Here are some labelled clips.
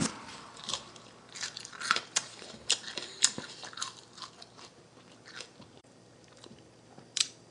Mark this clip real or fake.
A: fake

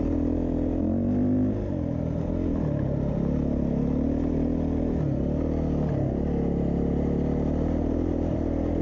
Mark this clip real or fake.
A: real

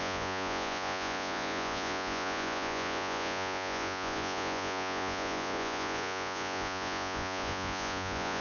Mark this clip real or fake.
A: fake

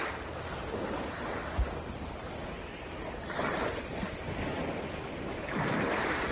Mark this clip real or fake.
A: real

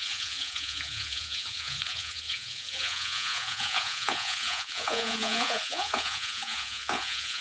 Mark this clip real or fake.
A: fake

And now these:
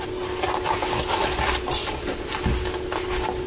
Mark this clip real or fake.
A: real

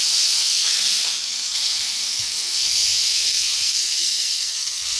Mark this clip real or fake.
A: fake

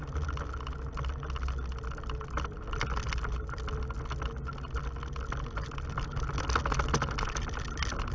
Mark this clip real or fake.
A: real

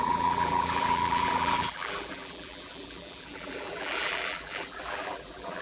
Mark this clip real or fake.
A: fake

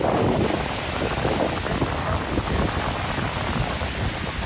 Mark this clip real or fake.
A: real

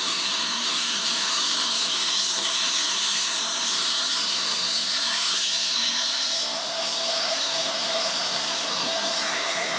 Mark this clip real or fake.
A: fake